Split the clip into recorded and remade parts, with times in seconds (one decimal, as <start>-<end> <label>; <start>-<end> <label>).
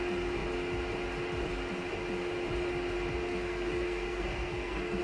0.0-3.3 recorded; 3.3-5.0 remade